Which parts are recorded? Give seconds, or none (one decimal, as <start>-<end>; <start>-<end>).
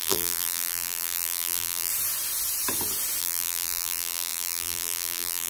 1.9-3.2